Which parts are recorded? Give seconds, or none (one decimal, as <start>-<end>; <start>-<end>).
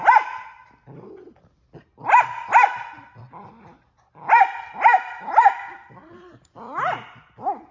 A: 0.6-2.2